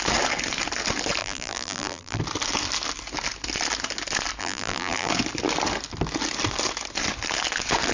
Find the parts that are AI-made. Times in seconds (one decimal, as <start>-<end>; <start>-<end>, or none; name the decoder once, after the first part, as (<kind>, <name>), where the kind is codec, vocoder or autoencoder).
1.2-2.2 (vocoder, BigVGAN v2); 4.4-5.1